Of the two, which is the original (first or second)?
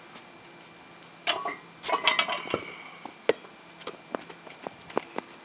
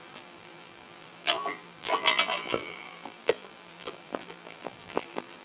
first